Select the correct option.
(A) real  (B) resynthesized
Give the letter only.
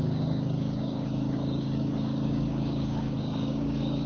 B